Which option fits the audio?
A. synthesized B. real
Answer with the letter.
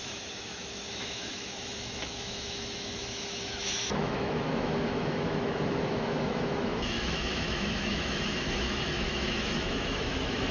A